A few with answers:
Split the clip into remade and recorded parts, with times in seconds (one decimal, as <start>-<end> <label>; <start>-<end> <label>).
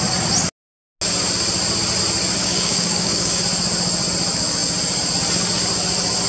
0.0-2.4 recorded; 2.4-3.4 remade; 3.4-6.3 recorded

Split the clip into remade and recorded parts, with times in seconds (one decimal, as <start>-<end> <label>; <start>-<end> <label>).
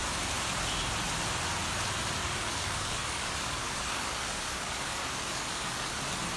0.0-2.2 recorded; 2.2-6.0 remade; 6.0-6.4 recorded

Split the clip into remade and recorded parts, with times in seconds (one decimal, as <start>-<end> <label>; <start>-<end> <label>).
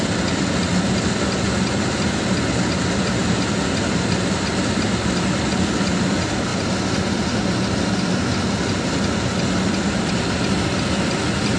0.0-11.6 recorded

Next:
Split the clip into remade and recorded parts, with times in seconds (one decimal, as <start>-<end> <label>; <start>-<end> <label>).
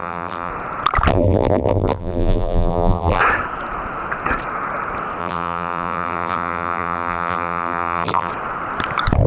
0.0-0.5 remade; 0.5-1.1 recorded; 1.1-3.2 remade; 3.2-5.2 recorded; 5.2-8.3 remade; 8.3-9.3 recorded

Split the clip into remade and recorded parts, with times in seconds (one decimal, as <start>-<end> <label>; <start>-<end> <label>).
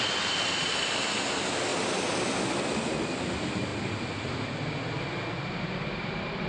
0.0-3.7 remade; 3.7-5.5 recorded; 5.5-6.5 remade